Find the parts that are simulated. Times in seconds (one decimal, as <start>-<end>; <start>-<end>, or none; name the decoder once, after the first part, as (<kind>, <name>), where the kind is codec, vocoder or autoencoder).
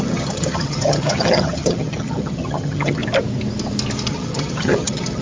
0.0-3.0 (vocoder, HiFi-GAN); 4.1-5.2